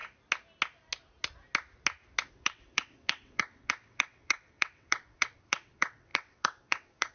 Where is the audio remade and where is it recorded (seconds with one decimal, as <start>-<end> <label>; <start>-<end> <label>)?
0.0-2.3 recorded; 2.3-7.1 remade